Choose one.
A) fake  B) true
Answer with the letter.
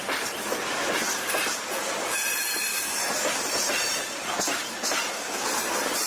A